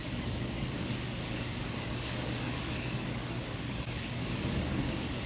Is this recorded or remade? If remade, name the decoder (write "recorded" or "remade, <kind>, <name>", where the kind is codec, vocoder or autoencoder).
remade, codec, DAC